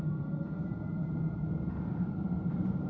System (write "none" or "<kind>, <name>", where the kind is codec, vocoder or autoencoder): vocoder, BigVGAN v2